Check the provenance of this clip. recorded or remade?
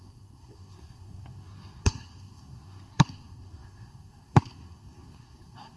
remade